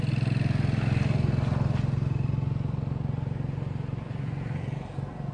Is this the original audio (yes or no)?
yes